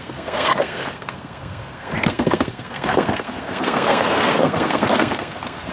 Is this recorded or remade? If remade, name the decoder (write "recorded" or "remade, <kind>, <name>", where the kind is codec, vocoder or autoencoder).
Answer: remade, codec, SNAC